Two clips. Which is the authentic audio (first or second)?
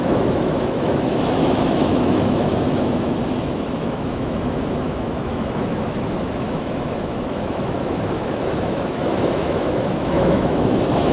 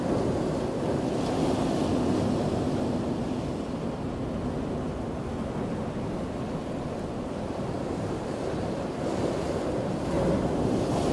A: second